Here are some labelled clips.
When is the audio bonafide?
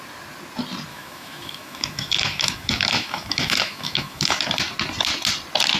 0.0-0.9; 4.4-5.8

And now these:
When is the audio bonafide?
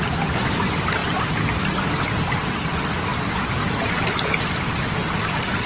0.0-5.7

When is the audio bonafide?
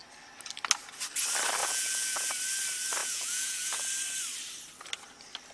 0.0-1.6; 2.3-3.0; 3.9-5.5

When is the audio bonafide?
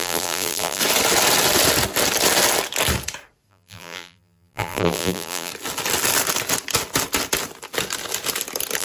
0.8-3.5; 5.5-8.8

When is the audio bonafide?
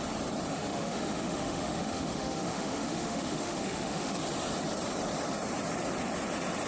0.0-0.5; 4.2-6.7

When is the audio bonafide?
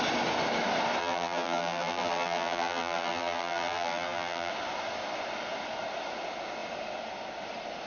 0.0-1.0; 4.5-7.9